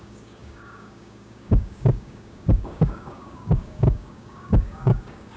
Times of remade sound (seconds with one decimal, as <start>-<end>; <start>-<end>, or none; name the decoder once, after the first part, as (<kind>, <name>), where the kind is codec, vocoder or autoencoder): 0.0-5.4 (codec, DAC)